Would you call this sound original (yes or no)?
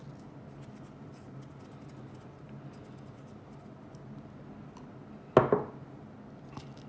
yes